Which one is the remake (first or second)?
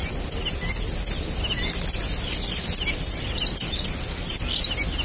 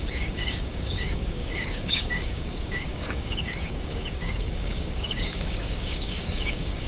second